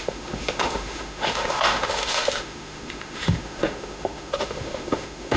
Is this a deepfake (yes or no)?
yes